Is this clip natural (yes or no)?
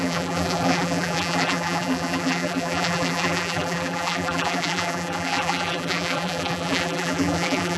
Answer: no